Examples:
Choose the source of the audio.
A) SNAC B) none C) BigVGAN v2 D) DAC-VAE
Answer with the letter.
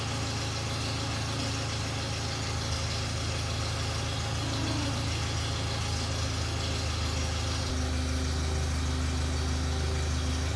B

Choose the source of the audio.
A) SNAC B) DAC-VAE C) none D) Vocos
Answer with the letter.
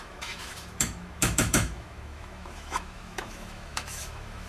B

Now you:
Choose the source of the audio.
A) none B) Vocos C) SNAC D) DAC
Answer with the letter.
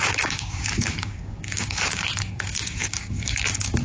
D